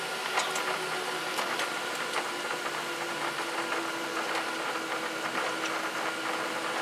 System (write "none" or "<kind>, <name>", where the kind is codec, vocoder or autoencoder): none